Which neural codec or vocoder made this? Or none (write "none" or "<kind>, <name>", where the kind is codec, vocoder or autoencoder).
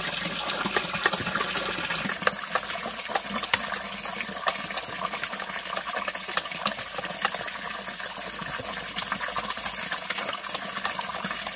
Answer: none